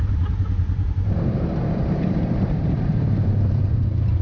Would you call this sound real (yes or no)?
no